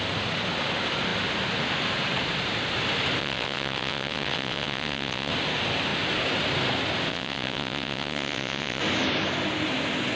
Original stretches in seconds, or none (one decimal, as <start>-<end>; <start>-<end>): 0.0-3.2; 5.3-7.1; 8.8-10.2